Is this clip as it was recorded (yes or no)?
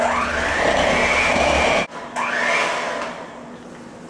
yes